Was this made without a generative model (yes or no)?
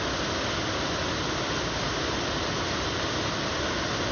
yes